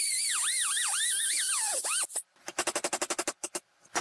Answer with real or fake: real